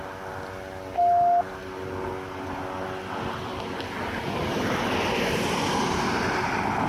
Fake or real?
real